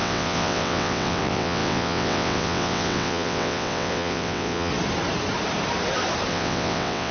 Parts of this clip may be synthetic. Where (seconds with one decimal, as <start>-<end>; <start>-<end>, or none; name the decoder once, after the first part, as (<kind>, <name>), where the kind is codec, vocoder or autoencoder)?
0.0-4.7 (vocoder, WaveNeXt); 6.3-7.1